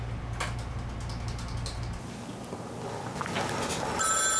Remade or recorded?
recorded